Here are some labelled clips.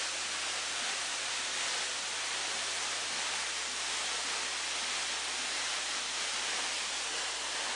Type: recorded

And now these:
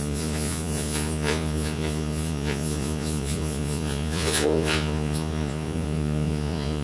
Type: remade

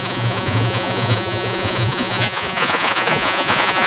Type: remade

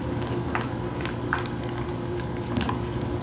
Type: remade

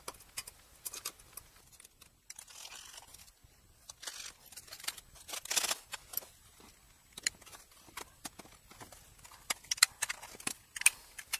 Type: recorded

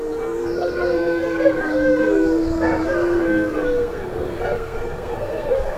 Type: remade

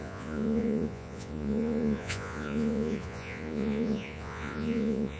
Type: remade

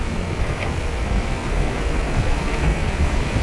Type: remade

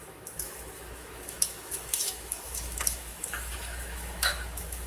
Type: remade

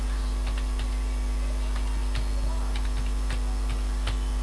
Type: recorded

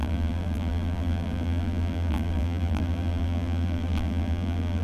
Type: remade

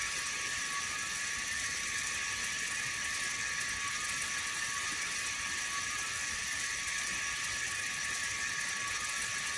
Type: recorded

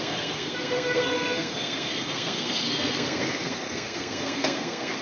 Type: remade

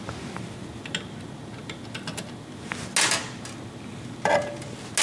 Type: recorded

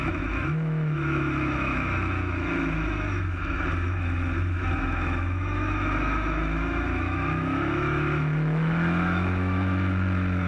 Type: remade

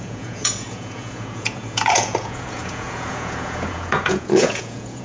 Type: remade